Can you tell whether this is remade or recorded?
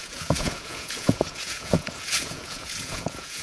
remade